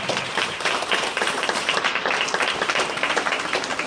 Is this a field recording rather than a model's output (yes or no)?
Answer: no